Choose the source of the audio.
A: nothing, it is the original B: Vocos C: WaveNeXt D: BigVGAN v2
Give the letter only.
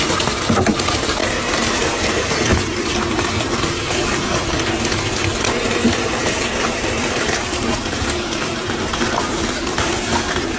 A